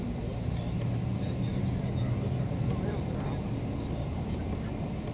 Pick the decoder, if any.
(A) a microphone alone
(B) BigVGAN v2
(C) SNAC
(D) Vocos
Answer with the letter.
A